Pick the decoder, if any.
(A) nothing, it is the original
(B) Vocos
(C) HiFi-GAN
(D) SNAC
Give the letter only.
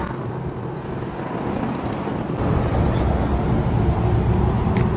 A